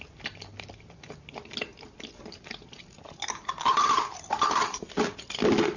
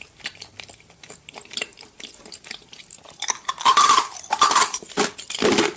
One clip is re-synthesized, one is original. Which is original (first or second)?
first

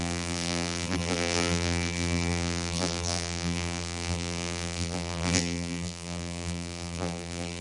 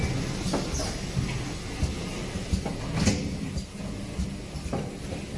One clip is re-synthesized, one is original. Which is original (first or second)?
second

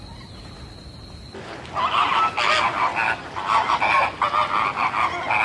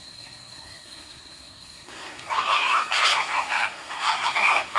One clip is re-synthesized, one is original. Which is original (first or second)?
first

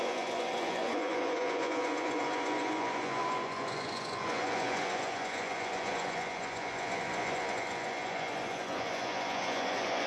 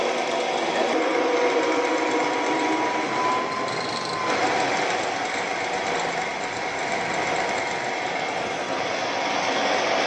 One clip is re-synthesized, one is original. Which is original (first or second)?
second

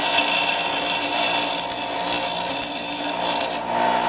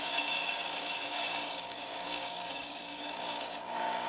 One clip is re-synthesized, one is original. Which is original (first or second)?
first